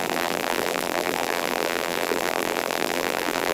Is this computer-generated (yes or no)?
yes